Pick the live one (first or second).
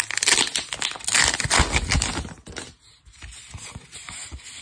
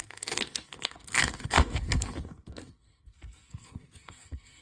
first